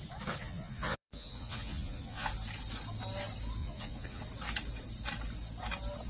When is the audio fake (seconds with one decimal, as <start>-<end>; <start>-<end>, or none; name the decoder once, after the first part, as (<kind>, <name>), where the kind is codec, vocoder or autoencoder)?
0.4-2.3 (vocoder, Vocos); 3.6-4.2